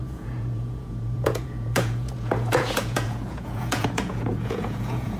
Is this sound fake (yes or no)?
yes